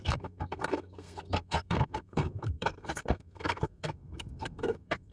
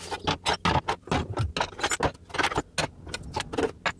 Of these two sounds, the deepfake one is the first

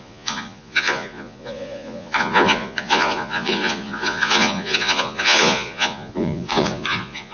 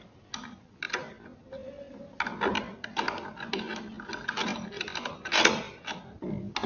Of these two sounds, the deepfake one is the first